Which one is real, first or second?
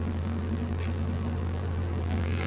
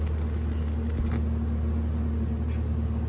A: second